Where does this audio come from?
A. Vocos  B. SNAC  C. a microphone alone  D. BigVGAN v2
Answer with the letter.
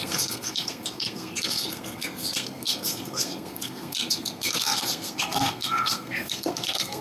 B